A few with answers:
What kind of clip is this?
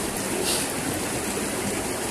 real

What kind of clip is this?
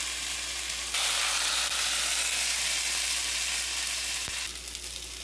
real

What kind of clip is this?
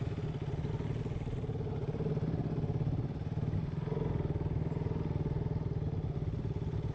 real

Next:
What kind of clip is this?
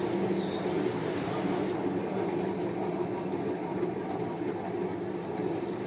real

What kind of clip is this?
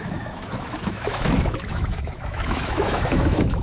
fake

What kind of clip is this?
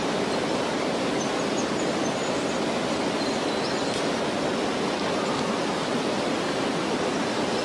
real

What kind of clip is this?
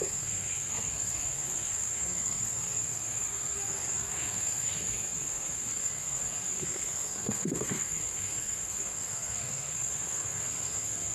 fake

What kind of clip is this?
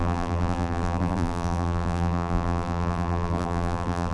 fake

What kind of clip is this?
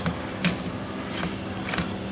real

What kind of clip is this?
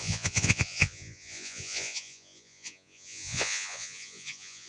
fake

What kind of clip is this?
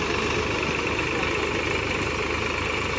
real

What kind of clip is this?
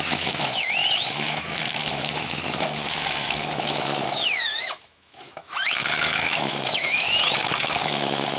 fake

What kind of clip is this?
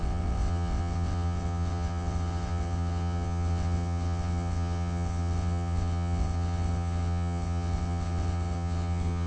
fake